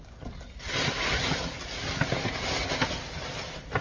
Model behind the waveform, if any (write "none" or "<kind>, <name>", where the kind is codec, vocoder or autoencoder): none